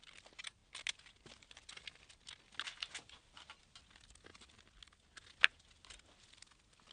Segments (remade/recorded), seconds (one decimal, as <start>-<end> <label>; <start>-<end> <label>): 0.0-6.9 recorded